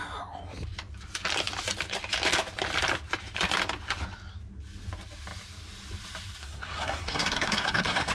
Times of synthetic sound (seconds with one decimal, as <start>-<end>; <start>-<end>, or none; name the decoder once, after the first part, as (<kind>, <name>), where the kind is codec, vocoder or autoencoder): 6.4-8.1 (codec, SNAC)